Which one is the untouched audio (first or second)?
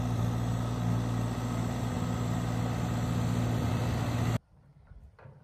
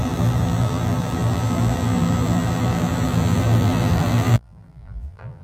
first